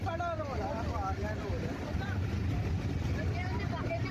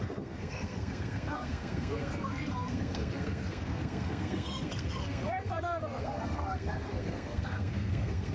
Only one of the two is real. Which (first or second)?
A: first